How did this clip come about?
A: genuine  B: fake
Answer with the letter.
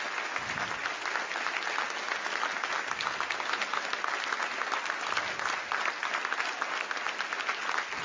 A